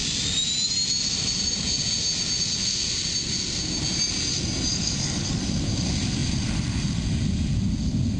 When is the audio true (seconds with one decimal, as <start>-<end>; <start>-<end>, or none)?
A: 0.0-4.7; 5.4-8.2